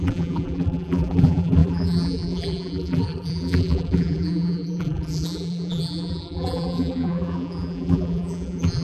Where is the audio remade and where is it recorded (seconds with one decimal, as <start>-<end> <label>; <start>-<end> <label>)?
0.0-8.8 remade